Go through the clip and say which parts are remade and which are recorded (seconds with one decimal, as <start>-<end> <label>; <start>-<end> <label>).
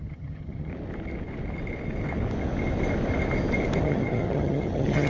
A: 0.0-0.7 remade; 0.7-3.8 recorded; 3.8-5.1 remade